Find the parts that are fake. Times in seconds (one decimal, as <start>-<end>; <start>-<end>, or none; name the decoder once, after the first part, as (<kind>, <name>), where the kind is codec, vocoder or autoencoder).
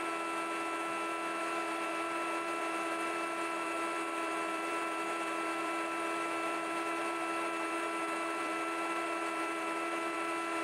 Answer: 1.4-10.6 (vocoder, BigVGAN v2)